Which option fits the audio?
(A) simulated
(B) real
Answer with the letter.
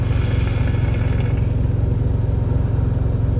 B